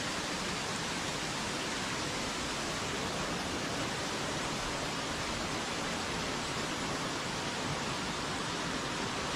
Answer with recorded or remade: remade